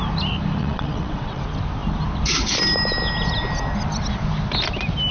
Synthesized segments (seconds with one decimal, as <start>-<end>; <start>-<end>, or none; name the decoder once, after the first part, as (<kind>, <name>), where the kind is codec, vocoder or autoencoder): 0.6-1.4 (vocoder, WaveNeXt)